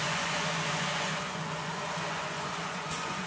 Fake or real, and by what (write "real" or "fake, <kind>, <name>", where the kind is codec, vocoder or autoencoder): fake, vocoder, Vocos